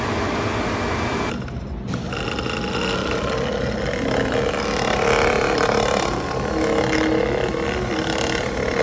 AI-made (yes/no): no